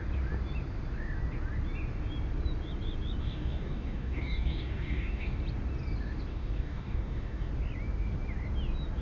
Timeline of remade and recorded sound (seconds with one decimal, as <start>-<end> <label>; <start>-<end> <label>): 0.0-3.2 recorded; 3.2-5.4 remade; 5.4-6.3 recorded; 6.3-7.5 remade; 7.5-9.0 recorded